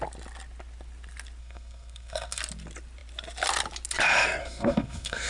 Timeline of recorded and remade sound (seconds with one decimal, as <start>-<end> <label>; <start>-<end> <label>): 0.0-1.4 recorded; 1.4-2.4 remade; 2.4-4.4 recorded; 4.4-5.3 remade